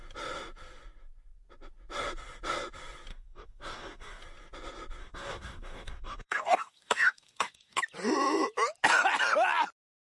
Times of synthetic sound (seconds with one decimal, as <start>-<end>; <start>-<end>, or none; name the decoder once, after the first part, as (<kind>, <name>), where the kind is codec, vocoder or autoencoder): 3.1-4.2 (codec, DAC); 5.0-7.8